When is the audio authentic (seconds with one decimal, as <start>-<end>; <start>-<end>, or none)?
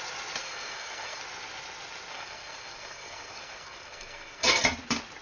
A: 0.0-0.4; 1.2-2.1; 4.6-5.2